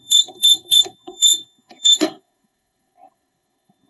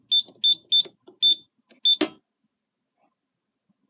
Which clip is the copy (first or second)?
first